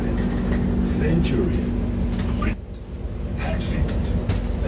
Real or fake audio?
real